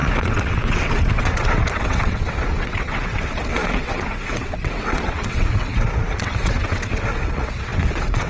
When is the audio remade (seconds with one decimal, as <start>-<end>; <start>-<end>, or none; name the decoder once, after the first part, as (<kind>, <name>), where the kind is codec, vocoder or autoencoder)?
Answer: 0.0-8.3 (vocoder, WaveNeXt)